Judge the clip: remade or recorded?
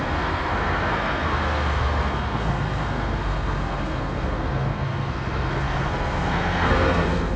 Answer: remade